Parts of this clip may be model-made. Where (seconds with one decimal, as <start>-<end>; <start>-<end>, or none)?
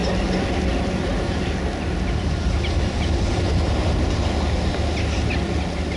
none